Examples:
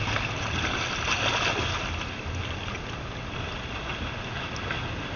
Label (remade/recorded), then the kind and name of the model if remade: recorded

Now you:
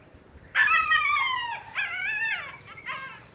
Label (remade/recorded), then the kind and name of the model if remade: remade, vocoder, BigVGAN v2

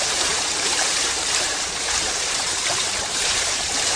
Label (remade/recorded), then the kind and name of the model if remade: remade, vocoder, BigVGAN v2